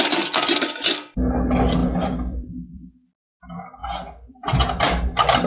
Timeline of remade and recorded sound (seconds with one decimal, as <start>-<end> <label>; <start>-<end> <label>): 0.0-1.8 recorded; 1.8-2.9 remade; 2.9-3.8 recorded; 3.8-4.8 remade; 4.8-5.5 recorded

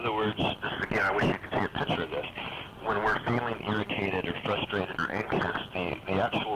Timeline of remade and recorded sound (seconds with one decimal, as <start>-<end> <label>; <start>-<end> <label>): 0.0-6.6 recorded

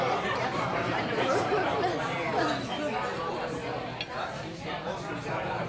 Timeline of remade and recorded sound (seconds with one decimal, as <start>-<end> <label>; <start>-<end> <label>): 0.0-2.3 remade; 2.3-3.2 recorded; 3.2-5.7 remade

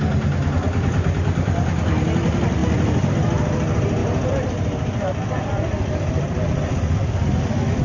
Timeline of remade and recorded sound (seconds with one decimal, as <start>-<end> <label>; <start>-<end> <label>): 0.0-2.6 recorded; 2.6-3.1 remade; 3.1-4.0 recorded; 4.0-7.8 remade